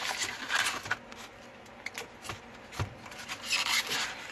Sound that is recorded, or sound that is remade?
recorded